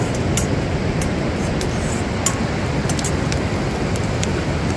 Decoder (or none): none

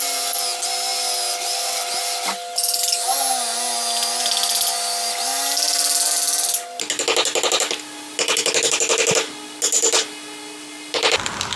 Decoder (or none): none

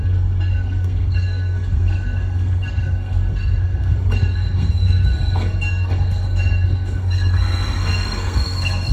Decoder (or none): codec, SNAC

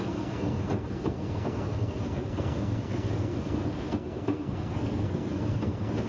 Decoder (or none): codec, SNAC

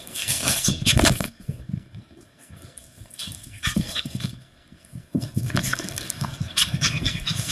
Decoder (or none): codec, SNAC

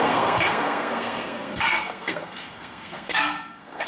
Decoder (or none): codec, SNAC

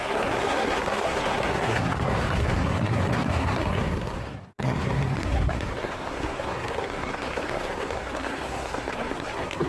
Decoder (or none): codec, SNAC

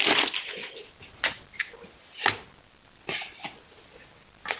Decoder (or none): none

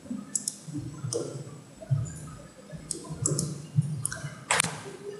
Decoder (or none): none